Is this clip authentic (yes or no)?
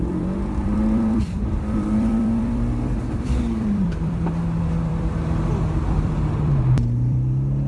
no